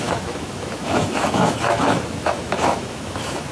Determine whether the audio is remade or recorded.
remade